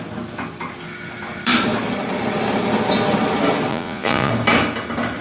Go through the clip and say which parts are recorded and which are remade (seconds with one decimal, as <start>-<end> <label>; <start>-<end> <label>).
0.0-3.7 recorded; 3.7-4.3 remade; 4.3-5.2 recorded